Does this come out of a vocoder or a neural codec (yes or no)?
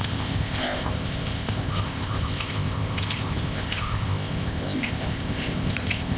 yes